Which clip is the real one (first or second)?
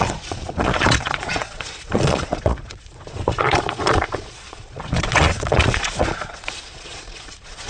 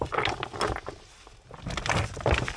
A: second